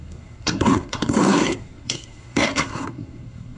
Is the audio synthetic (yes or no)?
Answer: yes